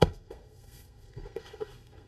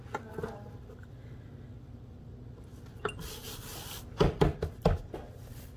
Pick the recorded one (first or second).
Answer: second